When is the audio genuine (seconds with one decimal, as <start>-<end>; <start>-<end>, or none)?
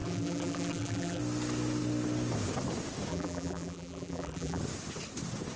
1.2-3.1; 4.6-5.6